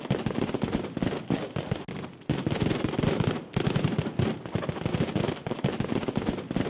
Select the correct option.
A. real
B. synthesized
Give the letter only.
A